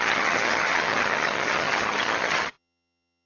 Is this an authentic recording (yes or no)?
no